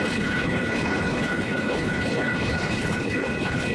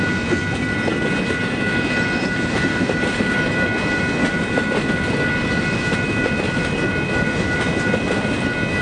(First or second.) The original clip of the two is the second